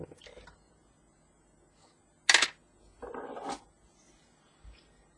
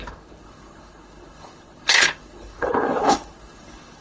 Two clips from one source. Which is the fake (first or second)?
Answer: second